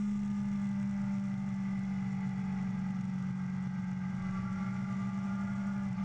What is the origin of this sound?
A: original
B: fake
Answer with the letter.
A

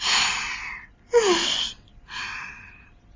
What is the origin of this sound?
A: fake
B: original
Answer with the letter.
B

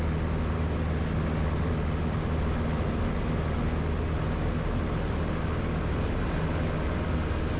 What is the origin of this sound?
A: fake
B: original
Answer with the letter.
B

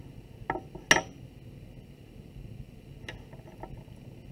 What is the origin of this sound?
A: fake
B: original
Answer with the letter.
B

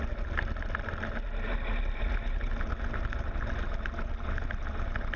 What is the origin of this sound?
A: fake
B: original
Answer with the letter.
B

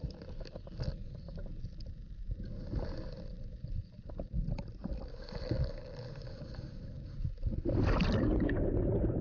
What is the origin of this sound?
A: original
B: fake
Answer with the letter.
A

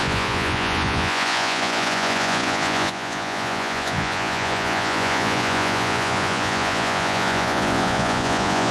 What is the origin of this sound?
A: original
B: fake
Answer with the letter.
B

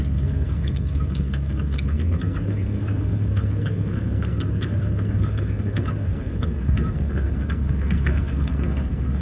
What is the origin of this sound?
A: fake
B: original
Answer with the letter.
A